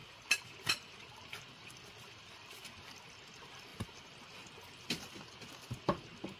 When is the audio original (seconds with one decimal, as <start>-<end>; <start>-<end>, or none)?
0.0-6.4